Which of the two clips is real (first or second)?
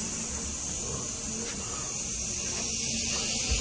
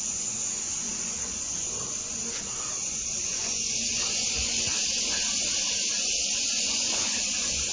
first